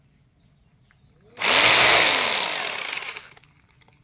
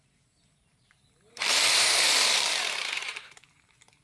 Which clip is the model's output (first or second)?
second